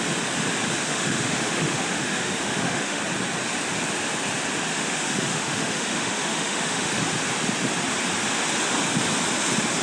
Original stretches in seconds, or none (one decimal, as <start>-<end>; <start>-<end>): 0.0-0.8; 3.0-4.7; 7.0-9.8